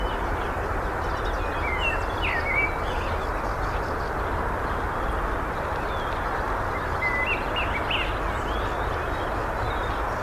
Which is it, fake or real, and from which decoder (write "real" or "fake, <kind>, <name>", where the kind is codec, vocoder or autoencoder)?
real